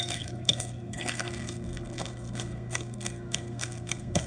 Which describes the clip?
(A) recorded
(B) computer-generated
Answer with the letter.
B